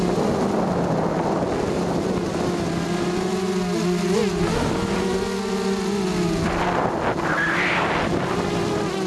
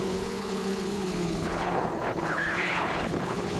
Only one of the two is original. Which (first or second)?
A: first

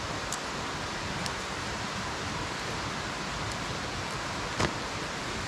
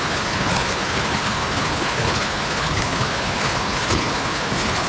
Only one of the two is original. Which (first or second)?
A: first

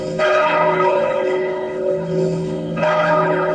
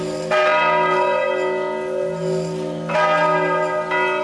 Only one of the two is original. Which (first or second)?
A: second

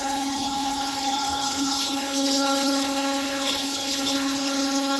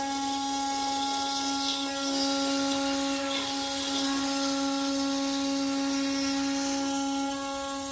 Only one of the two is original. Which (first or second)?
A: second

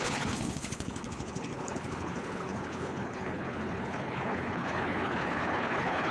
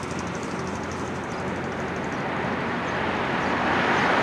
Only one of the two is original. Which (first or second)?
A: second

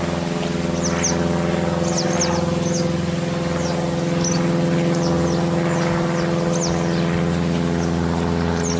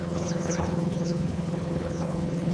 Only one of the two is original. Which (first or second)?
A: first